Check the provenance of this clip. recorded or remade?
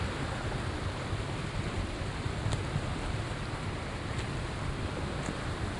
recorded